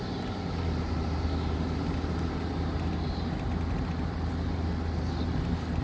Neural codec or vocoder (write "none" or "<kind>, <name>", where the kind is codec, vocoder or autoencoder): none